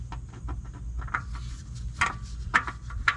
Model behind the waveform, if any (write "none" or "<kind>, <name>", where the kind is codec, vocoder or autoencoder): none